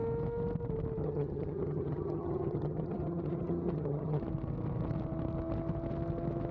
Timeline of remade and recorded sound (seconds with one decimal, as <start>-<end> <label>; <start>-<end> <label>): 0.0-1.0 recorded; 1.0-4.2 remade; 4.2-6.5 recorded